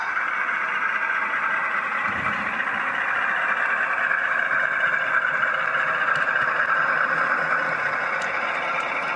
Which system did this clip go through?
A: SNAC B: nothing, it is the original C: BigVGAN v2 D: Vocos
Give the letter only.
B